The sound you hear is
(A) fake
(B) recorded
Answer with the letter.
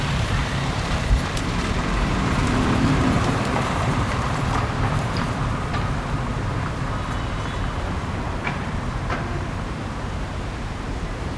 A